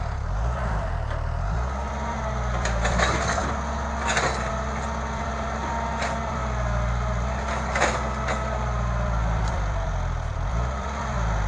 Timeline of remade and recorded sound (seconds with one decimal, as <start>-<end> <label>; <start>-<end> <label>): 0.0-3.4 remade; 3.4-4.5 recorded; 4.5-11.5 remade